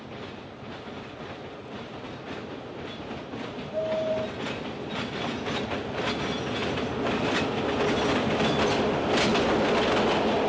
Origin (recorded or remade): recorded